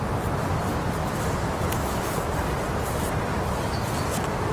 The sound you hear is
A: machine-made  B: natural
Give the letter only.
B